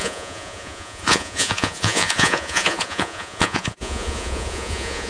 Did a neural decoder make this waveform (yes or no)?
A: yes